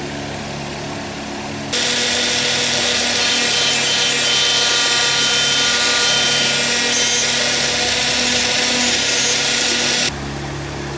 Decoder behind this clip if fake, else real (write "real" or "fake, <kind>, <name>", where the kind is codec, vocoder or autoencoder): real